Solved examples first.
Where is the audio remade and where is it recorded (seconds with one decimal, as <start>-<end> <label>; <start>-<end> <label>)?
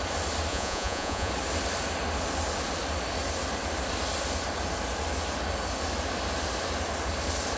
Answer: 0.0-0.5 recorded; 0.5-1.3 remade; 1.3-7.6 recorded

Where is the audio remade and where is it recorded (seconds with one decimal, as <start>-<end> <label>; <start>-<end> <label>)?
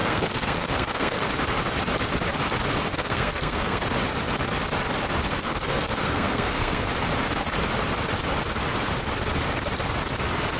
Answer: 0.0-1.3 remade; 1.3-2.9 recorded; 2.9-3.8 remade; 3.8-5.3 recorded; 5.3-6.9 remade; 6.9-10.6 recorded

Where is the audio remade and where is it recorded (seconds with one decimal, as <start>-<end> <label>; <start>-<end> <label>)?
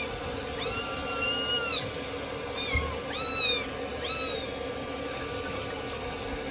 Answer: 0.0-6.5 recorded